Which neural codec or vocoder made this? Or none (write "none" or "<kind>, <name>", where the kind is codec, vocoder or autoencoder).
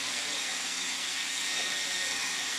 codec, SNAC